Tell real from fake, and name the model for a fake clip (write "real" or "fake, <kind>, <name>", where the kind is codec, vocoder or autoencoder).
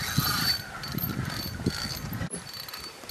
real